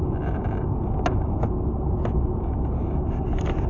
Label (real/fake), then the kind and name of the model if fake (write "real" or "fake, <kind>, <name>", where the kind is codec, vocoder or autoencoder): real